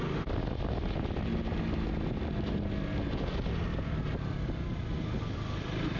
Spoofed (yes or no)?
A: no